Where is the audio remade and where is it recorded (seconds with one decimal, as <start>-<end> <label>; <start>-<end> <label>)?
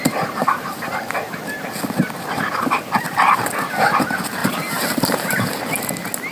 0.0-0.4 recorded; 0.4-1.0 remade; 1.0-4.4 recorded; 4.4-5.6 remade; 5.6-6.3 recorded